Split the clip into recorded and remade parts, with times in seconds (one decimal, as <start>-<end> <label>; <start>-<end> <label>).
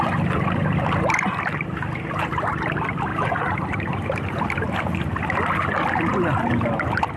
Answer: 0.0-3.1 recorded; 3.1-4.5 remade; 4.5-7.2 recorded